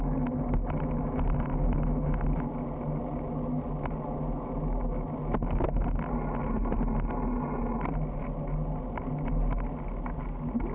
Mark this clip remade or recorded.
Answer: recorded